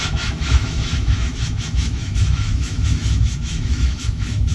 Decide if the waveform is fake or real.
fake